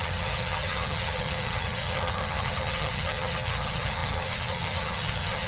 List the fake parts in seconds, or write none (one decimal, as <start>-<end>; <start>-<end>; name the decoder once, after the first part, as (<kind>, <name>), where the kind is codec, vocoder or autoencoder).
0.0-5.5 (vocoder, HiFi-GAN)